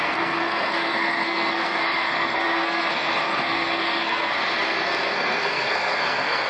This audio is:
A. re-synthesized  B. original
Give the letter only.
A